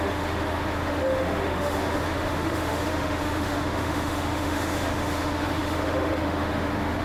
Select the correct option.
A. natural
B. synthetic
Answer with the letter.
B